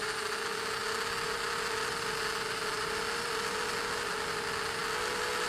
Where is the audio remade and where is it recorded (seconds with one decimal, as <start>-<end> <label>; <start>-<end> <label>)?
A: 0.0-5.5 recorded